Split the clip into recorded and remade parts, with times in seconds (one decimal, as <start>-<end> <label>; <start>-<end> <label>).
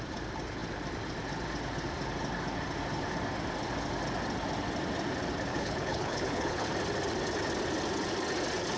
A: 0.0-5.5 recorded; 5.5-6.7 remade; 6.7-8.8 recorded